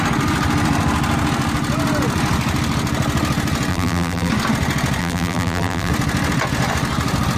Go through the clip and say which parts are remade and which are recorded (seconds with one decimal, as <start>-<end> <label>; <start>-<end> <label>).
0.0-3.7 recorded; 3.7-4.3 remade; 4.3-5.0 recorded; 5.0-5.9 remade; 5.9-7.4 recorded